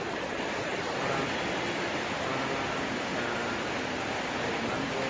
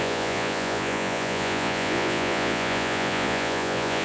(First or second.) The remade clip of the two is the second